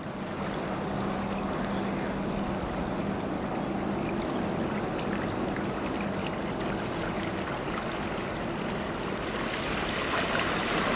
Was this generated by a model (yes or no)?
no